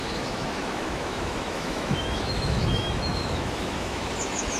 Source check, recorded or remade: remade